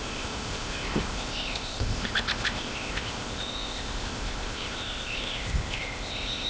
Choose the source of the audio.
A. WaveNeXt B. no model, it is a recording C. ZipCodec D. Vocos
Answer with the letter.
C